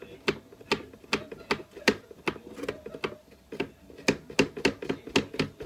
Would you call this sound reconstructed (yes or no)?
no